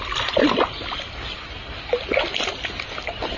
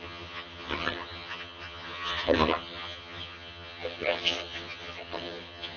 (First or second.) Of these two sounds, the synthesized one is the second